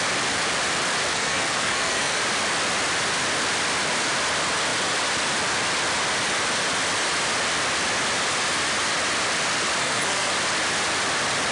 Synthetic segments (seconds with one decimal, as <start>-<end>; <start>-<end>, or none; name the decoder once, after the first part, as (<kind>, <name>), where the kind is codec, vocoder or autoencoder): 1.1-2.2 (codec, SNAC); 9.8-10.3

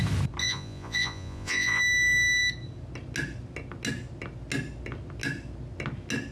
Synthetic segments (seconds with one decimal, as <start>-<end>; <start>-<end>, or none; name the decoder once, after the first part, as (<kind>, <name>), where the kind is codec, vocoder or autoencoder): 0.4-1.8 (vocoder, Vocos)

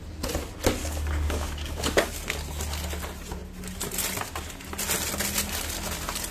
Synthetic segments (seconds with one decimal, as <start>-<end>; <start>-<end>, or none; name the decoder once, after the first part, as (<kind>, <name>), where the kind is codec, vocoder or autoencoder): 0.8-2.1 (codec, DAC)

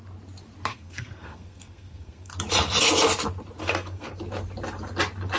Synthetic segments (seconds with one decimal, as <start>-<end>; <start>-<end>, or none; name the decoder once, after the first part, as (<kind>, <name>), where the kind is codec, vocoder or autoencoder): 0.7-2.3 (codec, SNAC); 3.6-4.2

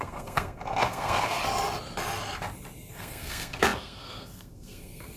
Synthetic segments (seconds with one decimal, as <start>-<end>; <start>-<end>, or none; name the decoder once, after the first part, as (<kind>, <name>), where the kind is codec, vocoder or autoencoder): 0.0-1.4 (codec, SNAC); 2.9-5.2